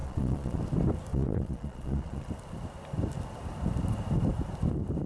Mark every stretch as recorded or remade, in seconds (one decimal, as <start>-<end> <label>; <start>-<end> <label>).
0.0-0.6 remade; 0.6-1.1 recorded; 1.1-2.3 remade; 2.3-5.1 recorded